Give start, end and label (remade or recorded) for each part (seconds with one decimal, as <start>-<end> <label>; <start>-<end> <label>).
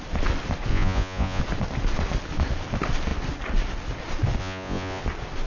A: 0.0-0.7 recorded; 0.7-1.4 remade; 1.4-4.4 recorded; 4.4-5.0 remade; 5.0-5.5 recorded